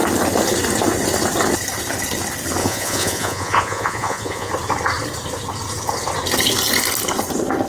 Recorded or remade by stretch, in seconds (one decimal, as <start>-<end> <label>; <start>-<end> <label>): 0.0-2.6 recorded; 2.6-4.5 remade; 4.5-7.7 recorded